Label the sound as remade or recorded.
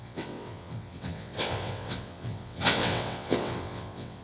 remade